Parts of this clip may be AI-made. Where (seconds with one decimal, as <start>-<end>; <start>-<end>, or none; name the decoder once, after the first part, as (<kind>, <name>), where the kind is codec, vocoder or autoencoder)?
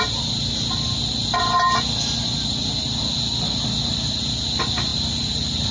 none